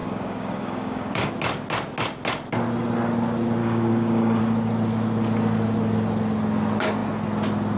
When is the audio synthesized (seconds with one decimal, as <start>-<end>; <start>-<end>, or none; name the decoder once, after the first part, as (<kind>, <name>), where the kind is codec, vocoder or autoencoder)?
0.0-1.3 (codec, DAC); 3.6-4.4